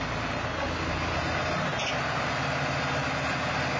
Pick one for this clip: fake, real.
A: real